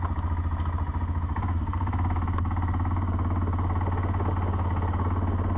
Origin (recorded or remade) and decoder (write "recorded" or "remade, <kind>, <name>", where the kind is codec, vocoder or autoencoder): recorded